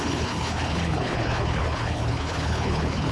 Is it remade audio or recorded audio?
remade